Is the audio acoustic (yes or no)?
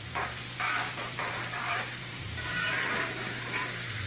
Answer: no